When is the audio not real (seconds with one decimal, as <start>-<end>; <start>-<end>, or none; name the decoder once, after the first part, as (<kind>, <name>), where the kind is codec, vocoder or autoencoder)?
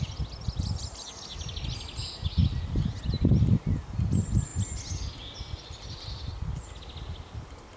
none